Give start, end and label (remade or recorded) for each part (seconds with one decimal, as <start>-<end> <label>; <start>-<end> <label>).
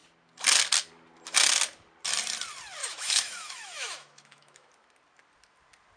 0.0-2.8 recorded; 2.8-4.7 remade; 4.7-6.0 recorded